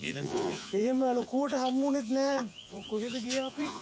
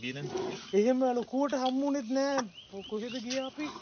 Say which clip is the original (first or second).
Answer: second